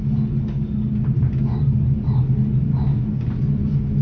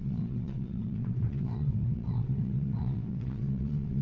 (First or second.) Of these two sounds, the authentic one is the first